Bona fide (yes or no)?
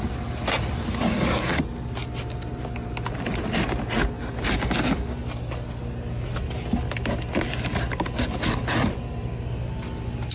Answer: yes